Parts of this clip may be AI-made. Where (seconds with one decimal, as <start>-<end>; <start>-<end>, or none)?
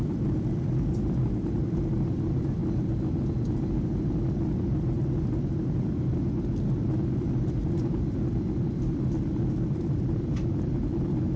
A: 0.0-2.6; 7.2-11.4